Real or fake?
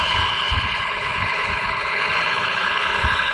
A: fake